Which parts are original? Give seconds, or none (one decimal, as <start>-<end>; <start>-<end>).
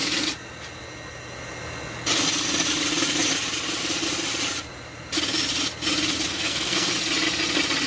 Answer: 0.0-6.3; 6.9-7.9